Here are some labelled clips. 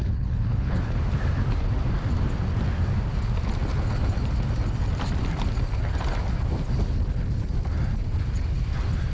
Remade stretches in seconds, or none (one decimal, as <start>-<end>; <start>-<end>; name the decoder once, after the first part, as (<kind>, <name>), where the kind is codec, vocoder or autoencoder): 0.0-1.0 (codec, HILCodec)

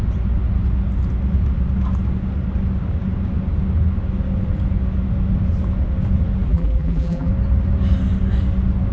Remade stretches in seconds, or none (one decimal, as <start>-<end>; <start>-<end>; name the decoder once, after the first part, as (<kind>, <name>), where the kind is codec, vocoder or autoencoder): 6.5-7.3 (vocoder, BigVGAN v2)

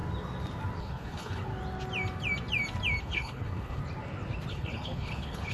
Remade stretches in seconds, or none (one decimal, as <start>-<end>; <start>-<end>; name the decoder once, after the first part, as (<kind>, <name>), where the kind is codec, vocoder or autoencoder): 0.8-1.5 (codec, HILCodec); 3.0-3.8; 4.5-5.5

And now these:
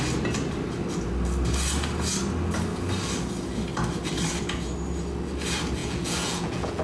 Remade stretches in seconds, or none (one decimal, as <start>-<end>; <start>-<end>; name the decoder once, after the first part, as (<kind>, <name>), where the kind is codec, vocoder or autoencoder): 5.8-6.8 (vocoder, Vocos)

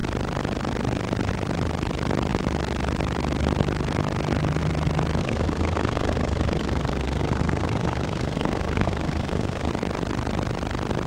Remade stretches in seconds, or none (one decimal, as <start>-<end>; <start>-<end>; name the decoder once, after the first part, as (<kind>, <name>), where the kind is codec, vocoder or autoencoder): 5.2-9.7 (codec, SNAC)